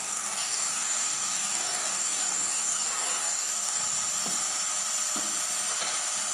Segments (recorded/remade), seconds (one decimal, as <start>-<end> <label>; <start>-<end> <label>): 0.0-3.8 remade; 3.8-6.3 recorded